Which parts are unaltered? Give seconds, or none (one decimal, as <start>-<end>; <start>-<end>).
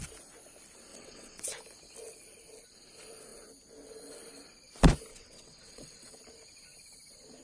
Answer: 0.0-0.9; 1.6-5.1; 6.2-7.4